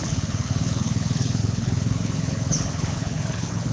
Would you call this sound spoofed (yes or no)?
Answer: yes